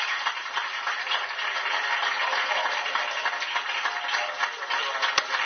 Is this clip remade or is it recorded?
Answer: recorded